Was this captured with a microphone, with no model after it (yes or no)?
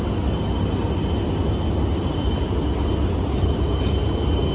yes